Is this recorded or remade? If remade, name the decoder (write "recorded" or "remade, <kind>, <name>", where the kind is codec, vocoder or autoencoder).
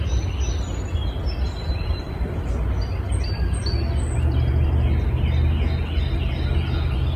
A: recorded